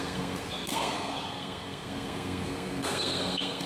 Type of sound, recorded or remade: remade